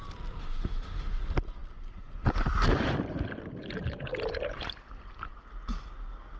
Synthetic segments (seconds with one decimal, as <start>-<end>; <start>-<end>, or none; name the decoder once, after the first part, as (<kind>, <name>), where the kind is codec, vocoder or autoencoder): 0.4-1.2 (autoencoder, DAC-VAE)

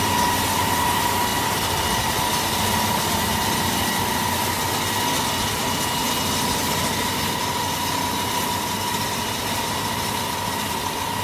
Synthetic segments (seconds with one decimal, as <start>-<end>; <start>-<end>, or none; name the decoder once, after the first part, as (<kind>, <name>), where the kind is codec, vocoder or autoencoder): none

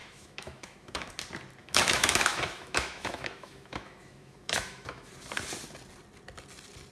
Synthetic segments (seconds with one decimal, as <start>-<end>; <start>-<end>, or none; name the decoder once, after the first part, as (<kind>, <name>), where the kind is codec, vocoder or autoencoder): 0.0-1.1 (autoencoder, DAC-VAE); 1.6-5.1

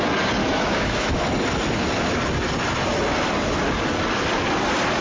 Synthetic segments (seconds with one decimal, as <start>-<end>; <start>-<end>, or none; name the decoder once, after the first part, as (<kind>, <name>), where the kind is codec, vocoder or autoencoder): 0.4-1.2 (autoencoder, DAC-VAE)

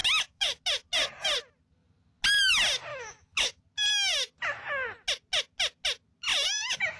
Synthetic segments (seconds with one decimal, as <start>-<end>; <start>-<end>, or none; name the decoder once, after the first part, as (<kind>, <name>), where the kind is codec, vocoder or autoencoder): 0.0-0.6 (autoencoder, DAC-VAE); 2.9-3.6; 6.3-7.0

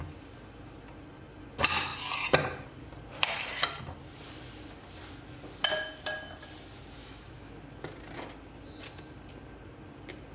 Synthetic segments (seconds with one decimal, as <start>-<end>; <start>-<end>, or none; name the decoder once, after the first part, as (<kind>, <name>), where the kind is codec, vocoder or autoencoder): 7.0-7.5 (autoencoder, DAC-VAE)

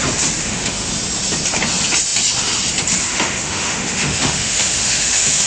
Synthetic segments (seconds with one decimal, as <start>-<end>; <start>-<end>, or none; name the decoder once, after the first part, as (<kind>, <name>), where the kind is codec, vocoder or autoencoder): 0.4-0.9 (autoencoder, DAC-VAE); 3.1-5.5

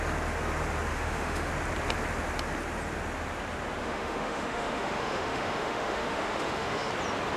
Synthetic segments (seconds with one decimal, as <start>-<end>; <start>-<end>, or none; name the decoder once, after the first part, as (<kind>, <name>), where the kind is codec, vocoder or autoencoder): 0.9-1.5 (autoencoder, DAC-VAE); 3.8-6.9